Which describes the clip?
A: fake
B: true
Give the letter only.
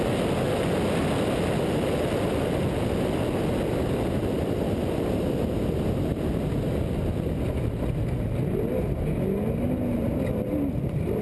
B